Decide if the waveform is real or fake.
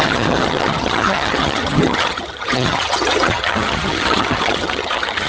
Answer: fake